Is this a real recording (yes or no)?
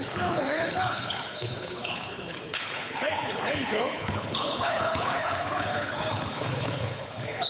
no